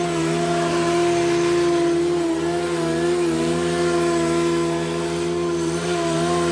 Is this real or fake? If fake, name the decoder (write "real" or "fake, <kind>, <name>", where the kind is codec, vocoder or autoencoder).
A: real